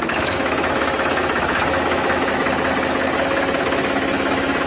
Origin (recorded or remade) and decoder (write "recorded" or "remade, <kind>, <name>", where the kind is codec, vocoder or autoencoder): remade, autoencoder, DAC-VAE